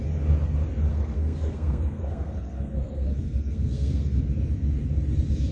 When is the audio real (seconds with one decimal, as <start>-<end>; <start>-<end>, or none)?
0.0-0.9; 4.2-5.5